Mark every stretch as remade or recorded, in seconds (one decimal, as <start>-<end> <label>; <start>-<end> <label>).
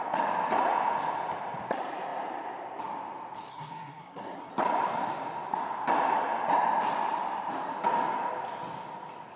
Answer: 0.0-3.5 recorded; 3.5-4.5 remade; 4.5-9.4 recorded